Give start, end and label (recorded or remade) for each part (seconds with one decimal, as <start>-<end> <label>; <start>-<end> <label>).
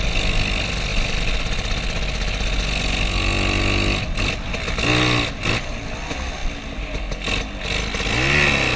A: 0.0-6.4 recorded; 6.4-7.0 remade; 7.0-8.8 recorded